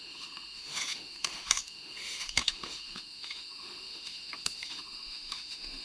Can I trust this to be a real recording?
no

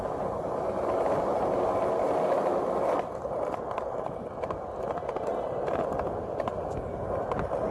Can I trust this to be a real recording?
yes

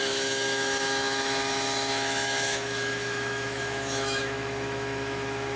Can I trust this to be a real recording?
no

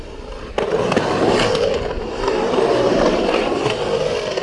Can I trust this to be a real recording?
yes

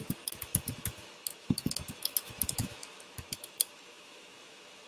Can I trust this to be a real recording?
no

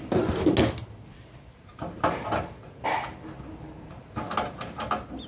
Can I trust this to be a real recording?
yes